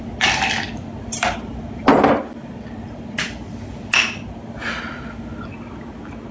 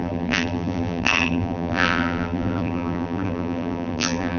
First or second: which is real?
first